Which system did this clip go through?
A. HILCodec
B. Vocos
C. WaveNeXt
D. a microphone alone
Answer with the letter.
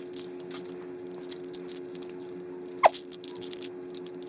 D